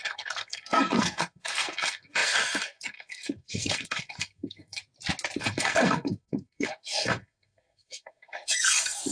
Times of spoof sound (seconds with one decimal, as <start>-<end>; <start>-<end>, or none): 0.0-4.8; 5.4-9.1